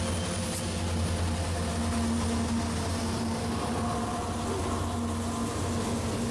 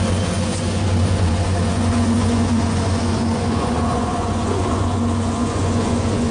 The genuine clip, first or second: first